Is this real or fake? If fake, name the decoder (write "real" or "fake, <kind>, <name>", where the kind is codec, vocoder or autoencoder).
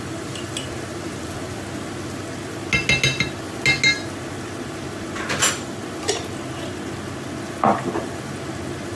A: real